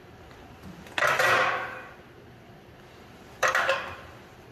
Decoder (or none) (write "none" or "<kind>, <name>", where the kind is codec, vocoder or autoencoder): none